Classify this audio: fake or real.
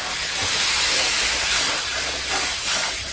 real